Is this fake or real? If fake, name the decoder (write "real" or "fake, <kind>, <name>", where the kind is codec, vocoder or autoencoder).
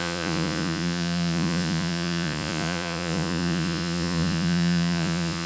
fake, vocoder, Vocos